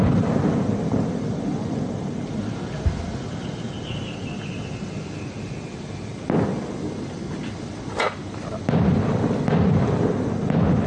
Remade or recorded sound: recorded